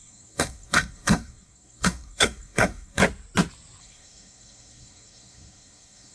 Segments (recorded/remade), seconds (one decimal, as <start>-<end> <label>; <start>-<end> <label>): 0.0-3.0 remade; 3.0-3.8 recorded; 3.8-6.1 remade